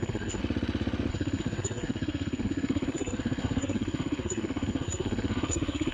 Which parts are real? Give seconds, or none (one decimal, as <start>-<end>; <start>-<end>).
0.4-1.1